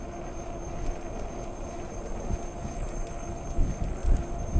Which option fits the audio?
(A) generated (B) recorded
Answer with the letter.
B